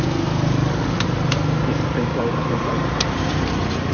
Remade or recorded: recorded